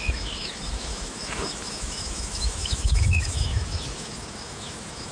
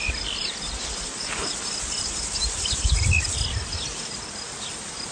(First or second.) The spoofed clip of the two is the first